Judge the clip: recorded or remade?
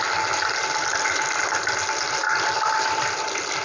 recorded